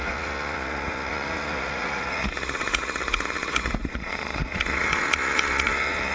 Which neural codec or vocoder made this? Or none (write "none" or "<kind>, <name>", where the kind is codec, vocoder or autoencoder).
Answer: vocoder, Vocos